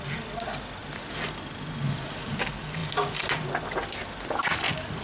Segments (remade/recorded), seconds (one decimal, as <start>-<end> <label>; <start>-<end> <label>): 0.0-5.0 recorded